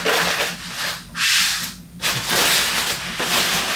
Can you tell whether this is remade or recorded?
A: recorded